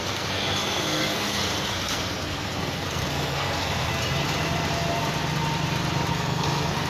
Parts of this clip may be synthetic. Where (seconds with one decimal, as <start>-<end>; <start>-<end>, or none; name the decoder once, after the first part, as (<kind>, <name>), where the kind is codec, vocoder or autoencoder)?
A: 0.0-3.9 (codec, SNAC); 6.1-6.9